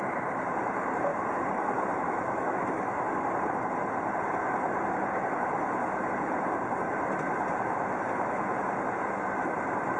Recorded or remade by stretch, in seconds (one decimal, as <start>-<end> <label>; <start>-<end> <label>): 0.0-1.1 recorded; 1.1-3.0 remade; 3.0-10.0 recorded